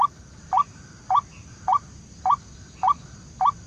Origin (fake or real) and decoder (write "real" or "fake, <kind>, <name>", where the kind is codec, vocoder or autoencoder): real